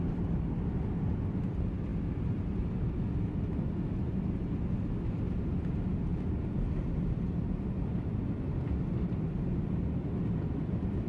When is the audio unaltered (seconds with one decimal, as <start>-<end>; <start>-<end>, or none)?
0.0-6.1; 8.2-11.1